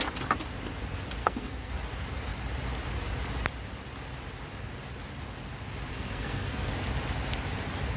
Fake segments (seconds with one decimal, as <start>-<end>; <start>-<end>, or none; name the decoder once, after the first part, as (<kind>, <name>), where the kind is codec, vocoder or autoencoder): 1.2-1.7 (codec, SNAC); 5.9-6.7